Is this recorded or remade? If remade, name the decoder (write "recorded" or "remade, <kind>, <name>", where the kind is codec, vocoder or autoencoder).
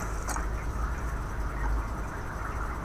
recorded